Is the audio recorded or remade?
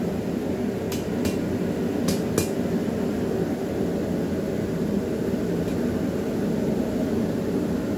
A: recorded